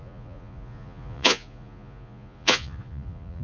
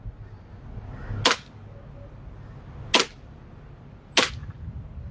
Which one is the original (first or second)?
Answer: second